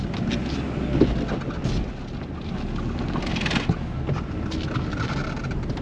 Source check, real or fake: real